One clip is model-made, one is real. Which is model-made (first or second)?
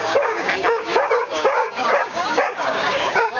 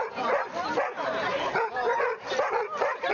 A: first